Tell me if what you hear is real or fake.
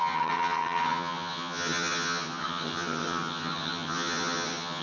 fake